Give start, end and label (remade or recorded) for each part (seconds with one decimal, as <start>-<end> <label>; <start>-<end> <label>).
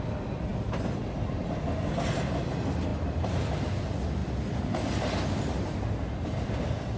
0.0-7.0 recorded